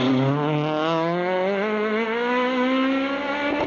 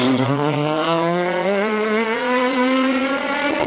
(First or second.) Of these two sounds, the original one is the first